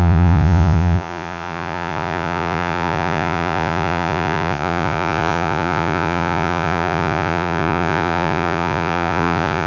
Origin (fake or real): fake